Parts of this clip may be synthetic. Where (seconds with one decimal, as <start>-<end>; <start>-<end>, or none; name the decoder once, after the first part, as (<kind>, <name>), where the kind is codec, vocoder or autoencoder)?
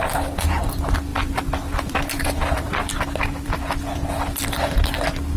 1.1-2.9 (vocoder, BigVGAN v2)